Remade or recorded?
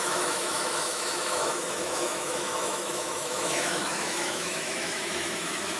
remade